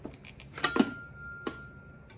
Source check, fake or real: real